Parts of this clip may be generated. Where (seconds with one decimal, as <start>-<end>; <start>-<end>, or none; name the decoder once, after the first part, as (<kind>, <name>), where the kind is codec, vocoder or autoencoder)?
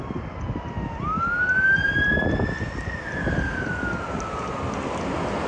none